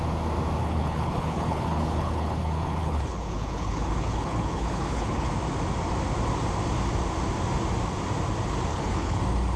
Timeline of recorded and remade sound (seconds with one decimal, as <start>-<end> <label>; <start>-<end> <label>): 0.0-0.6 recorded; 0.6-5.3 remade; 5.3-8.7 recorded; 8.7-9.2 remade; 9.2-9.6 recorded